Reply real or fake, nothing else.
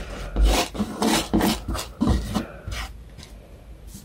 real